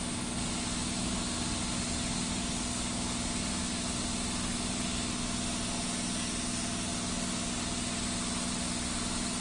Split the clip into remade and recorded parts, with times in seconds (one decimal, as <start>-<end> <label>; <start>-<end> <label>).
0.0-9.4 recorded